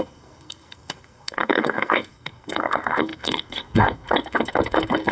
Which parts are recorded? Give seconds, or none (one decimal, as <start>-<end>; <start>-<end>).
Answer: none